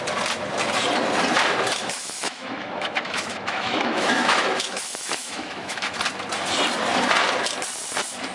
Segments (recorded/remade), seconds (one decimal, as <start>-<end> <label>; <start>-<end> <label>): 0.0-1.8 recorded; 1.8-6.0 remade; 6.0-8.3 recorded